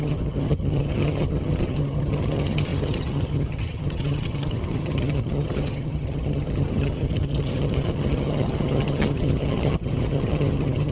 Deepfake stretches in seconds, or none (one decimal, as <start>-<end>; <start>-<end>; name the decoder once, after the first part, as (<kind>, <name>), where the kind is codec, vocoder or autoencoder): 0.0-10.9 (vocoder, HiFi-GAN)